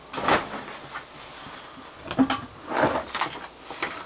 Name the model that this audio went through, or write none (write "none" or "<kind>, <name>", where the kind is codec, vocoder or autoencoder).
none